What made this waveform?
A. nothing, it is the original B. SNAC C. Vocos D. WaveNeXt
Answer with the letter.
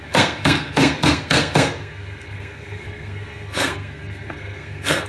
B